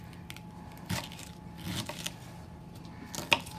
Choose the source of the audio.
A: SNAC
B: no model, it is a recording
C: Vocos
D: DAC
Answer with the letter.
B